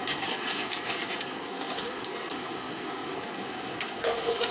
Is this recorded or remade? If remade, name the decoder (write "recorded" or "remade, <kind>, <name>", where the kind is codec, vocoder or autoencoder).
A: remade, codec, SNAC